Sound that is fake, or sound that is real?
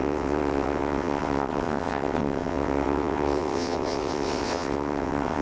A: fake